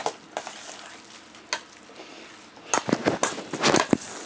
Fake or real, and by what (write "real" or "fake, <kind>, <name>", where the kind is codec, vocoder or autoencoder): real